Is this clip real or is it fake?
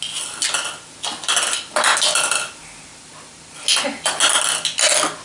real